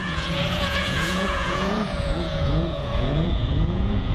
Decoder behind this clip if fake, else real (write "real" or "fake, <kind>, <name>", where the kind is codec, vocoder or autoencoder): fake, vocoder, Vocos